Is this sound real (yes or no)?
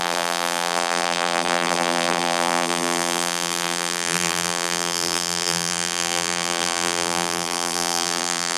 no